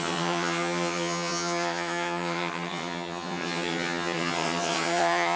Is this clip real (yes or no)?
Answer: no